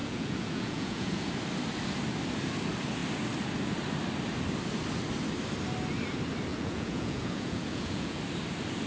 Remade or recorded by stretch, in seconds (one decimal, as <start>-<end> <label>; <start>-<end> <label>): 0.0-1.3 remade; 1.3-6.5 recorded; 6.5-8.2 remade; 8.2-8.9 recorded

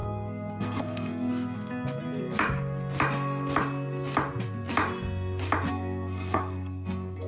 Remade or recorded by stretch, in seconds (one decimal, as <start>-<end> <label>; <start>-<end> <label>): 0.0-1.3 remade; 1.3-5.7 recorded; 5.7-7.3 remade

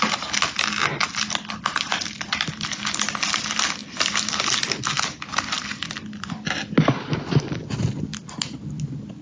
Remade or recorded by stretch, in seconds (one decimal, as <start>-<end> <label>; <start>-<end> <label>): 0.0-9.2 recorded

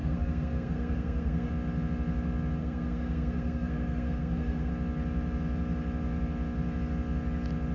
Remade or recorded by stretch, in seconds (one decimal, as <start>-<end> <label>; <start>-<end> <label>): 0.0-1.5 remade; 1.5-2.6 recorded; 2.6-4.7 remade; 4.7-7.7 recorded

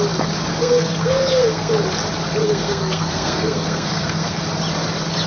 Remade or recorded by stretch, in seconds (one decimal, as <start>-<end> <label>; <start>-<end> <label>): 0.0-0.5 recorded; 0.5-1.7 remade; 1.7-2.4 recorded; 2.4-4.4 remade; 4.4-5.3 recorded

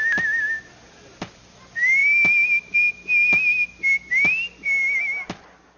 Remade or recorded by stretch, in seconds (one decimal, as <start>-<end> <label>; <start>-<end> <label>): 0.0-5.8 recorded